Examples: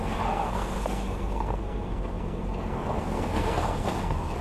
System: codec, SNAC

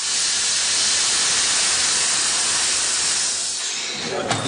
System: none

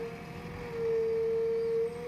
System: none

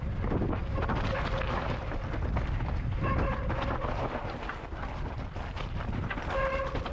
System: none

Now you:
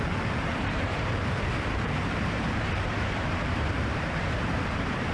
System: vocoder, BigVGAN v2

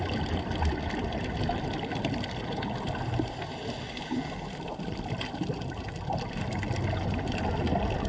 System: none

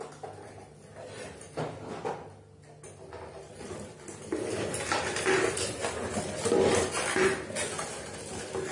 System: none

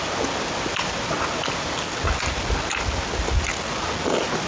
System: none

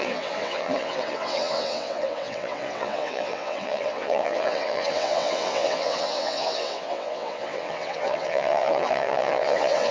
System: vocoder, WaveNeXt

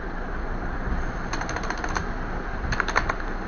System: none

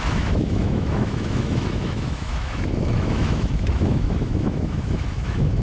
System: autoencoder, DAC-VAE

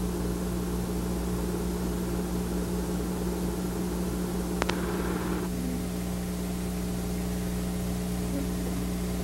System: none